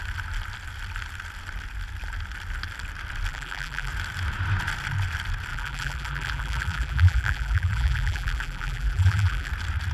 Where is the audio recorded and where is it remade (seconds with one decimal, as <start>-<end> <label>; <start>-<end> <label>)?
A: 0.0-3.3 recorded; 3.3-3.9 remade; 3.9-5.5 recorded; 5.5-9.5 remade; 9.5-9.9 recorded